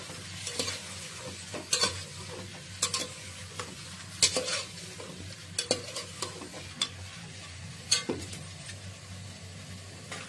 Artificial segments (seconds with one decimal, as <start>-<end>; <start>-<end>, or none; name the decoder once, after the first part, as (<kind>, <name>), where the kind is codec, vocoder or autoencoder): 0.8-2.3 (vocoder, Vocos); 3.0-3.9; 6.5-8.3